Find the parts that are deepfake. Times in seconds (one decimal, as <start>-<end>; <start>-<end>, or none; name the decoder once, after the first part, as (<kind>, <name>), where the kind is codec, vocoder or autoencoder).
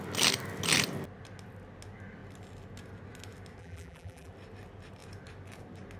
3.6-4.3 (vocoder, BigVGAN v2)